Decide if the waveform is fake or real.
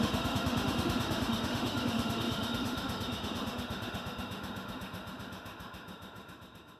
fake